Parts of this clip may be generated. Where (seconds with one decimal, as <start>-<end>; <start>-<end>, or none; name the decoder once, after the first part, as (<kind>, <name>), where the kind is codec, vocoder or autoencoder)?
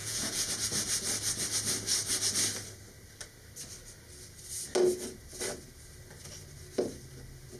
0.0-0.5 (vocoder, Vocos)